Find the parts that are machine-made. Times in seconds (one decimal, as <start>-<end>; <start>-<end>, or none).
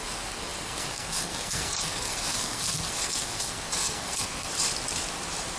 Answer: 0.0-4.5